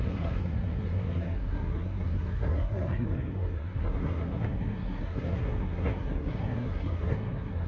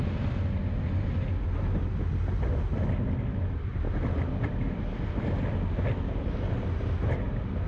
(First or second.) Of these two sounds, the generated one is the first